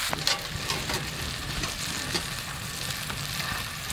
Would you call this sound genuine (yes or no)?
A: yes